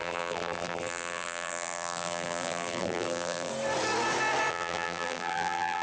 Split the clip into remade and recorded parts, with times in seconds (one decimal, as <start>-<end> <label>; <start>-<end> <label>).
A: 0.0-3.5 remade; 3.5-4.5 recorded; 4.5-5.8 remade